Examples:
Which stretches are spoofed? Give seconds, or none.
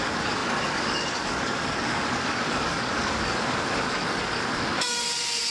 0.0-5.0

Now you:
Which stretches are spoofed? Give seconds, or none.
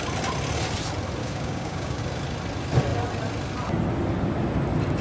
1.2-2.0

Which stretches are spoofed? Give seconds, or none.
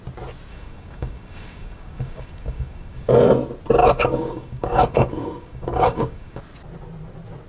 0.5-3.1; 3.8-6.4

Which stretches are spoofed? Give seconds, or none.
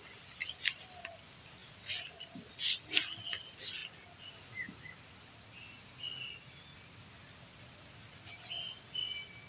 none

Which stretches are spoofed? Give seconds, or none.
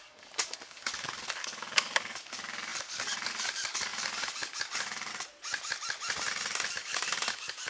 0.0-5.1; 6.7-7.7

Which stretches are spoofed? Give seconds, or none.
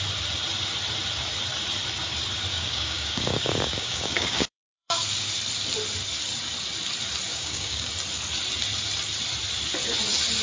2.5-5.3; 7.3-7.9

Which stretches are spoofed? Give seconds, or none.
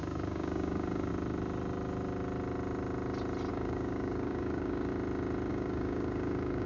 0.0-1.1; 3.5-4.9; 5.5-6.7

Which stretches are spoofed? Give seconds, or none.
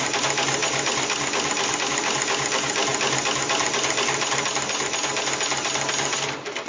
none